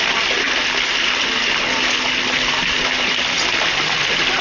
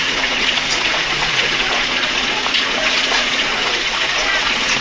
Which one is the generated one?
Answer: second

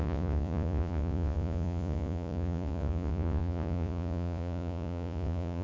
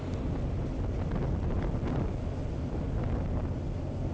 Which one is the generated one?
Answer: first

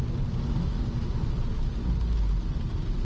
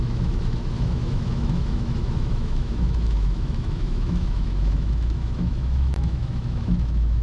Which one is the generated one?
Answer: second